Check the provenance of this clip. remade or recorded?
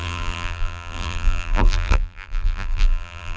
remade